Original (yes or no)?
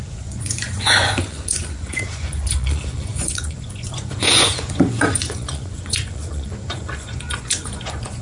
no